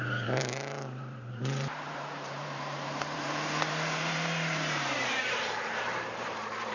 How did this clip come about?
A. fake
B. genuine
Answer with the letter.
A